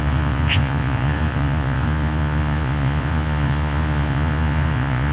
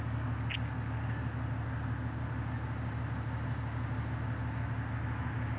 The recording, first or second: second